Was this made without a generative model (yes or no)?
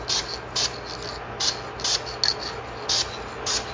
yes